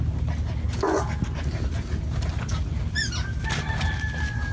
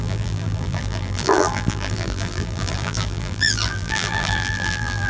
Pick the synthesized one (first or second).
second